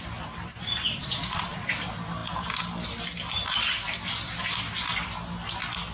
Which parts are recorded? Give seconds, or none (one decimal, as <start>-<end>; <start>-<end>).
0.0-1.0; 1.7-5.9